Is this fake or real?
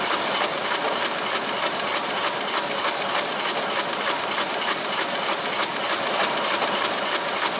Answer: real